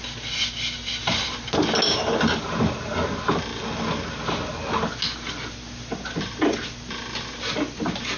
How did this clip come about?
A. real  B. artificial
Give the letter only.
A